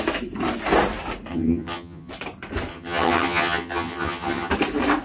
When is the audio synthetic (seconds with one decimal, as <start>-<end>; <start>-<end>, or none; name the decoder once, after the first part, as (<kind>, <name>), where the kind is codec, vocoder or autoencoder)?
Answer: 1.3-2.1 (vocoder, HiFi-GAN); 2.7-4.5